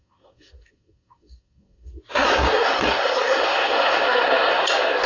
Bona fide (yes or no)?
no